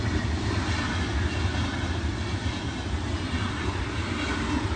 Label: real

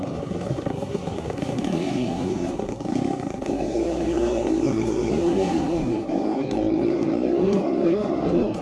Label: fake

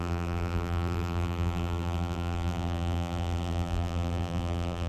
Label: fake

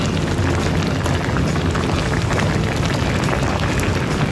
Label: real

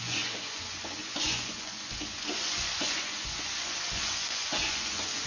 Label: fake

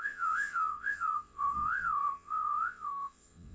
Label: fake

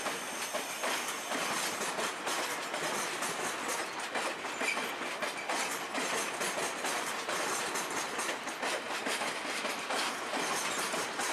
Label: real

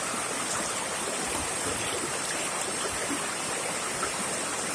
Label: fake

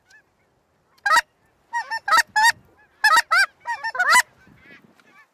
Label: real